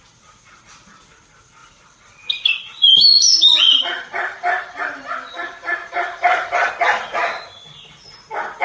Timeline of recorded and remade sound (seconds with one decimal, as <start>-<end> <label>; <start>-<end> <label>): 0.0-1.6 recorded; 1.6-6.7 remade; 6.7-8.6 recorded